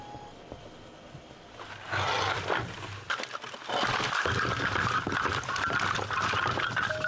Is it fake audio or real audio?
real